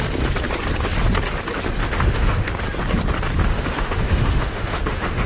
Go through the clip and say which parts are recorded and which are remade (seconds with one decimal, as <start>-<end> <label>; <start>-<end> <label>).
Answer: 0.0-1.8 recorded; 1.8-2.6 remade; 2.6-3.5 recorded; 3.5-5.3 remade